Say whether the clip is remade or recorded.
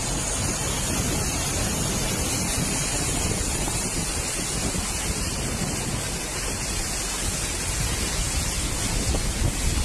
recorded